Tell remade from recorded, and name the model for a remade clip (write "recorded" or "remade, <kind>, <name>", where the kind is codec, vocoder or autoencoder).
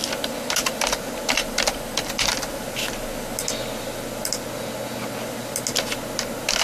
recorded